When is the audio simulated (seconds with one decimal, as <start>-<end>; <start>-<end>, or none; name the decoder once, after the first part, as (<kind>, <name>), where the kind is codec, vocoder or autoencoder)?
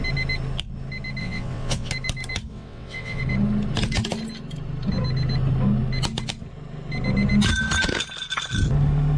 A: 1.2-1.9 (vocoder, WaveNeXt); 2.5-3.2